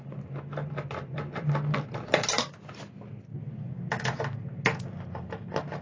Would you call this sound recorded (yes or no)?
yes